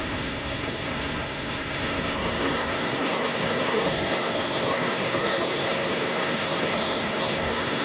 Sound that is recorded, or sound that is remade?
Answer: remade